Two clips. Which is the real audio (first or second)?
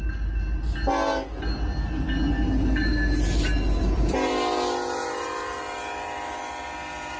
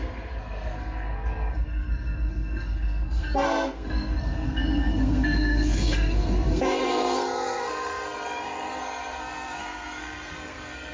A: first